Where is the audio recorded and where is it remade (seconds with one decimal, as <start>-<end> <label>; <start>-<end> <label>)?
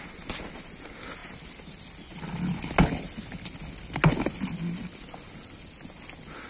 0.0-6.5 recorded